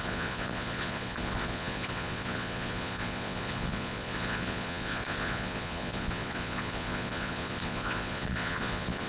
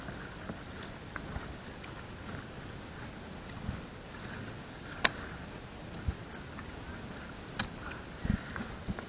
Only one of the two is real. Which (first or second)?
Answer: second